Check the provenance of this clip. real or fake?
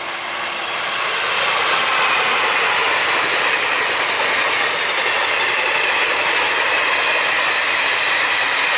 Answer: real